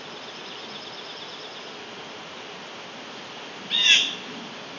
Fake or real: real